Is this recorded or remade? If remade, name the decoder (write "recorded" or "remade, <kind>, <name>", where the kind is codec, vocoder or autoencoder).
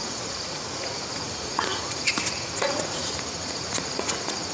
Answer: remade, vocoder, Vocos